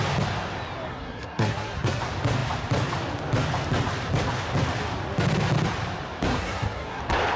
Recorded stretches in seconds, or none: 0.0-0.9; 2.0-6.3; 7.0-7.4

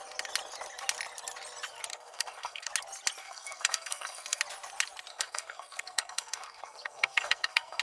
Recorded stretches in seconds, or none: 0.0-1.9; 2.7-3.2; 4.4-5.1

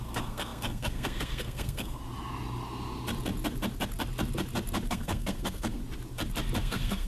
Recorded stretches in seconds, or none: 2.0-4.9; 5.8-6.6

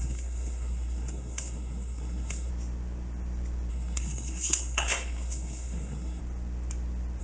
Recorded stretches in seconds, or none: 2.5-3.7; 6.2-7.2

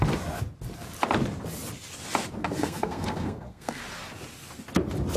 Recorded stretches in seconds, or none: 0.0-2.4; 3.8-5.2

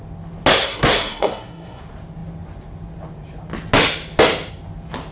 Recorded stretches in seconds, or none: 0.0-0.6; 1.8-5.1

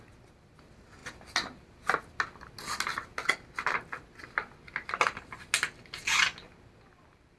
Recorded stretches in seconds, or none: 0.0-7.4

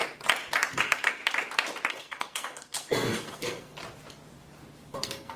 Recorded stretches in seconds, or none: 0.0-0.7; 1.2-1.9; 3.8-4.9